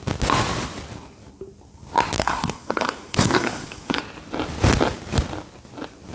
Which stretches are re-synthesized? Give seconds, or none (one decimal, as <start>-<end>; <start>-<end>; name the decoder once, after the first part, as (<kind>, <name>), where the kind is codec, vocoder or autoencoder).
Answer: 2.2-4.0 (codec, SNAC)